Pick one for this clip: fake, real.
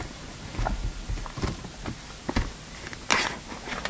real